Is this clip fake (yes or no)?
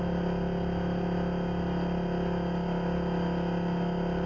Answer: no